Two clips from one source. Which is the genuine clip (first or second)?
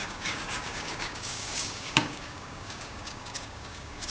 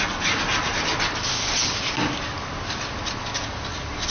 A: second